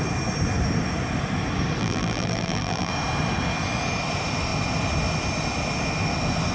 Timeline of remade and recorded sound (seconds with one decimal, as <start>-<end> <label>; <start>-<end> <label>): 0.0-1.8 recorded; 1.8-2.9 remade; 2.9-6.5 recorded